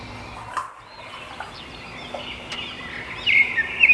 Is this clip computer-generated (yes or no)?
no